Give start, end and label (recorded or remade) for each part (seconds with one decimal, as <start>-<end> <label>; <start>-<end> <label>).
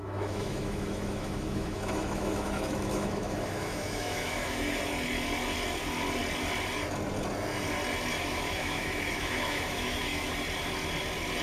0.0-4.8 remade; 4.8-8.1 recorded; 8.1-10.3 remade; 10.3-11.4 recorded